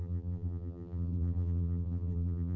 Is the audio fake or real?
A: fake